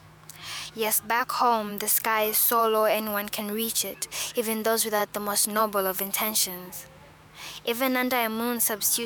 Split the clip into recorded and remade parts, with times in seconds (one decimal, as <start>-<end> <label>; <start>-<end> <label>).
0.0-1.7 remade; 1.7-2.6 recorded; 2.6-5.0 remade; 5.0-5.6 recorded; 5.6-9.1 remade